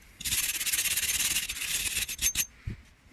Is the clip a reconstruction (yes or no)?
no